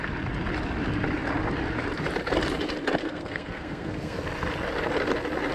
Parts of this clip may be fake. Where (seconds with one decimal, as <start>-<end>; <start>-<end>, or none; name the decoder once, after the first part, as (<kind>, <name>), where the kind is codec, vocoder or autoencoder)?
3.0-4.2 (codec, SNAC)